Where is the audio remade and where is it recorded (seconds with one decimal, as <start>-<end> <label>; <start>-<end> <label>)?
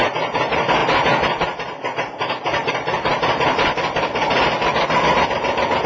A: 0.0-5.9 recorded